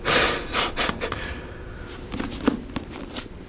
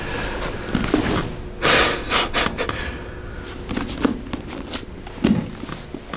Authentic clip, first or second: second